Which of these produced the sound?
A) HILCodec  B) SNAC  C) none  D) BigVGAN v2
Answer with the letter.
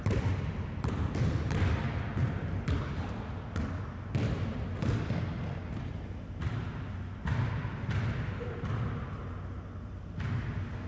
C